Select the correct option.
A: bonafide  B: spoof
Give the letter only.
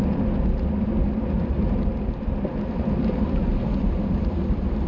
A